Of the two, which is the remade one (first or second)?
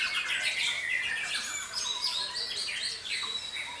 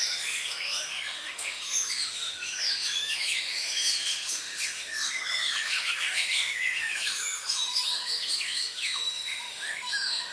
second